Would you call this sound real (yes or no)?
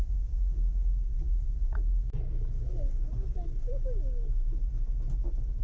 yes